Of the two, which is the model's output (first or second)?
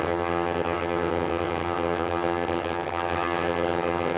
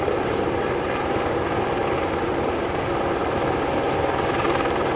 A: first